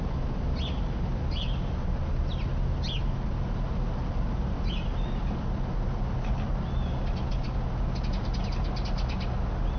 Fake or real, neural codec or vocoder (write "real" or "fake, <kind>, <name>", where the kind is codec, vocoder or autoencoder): real